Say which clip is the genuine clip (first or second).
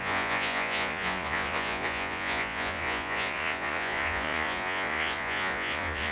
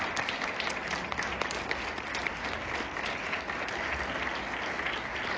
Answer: second